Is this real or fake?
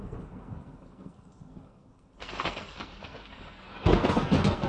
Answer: fake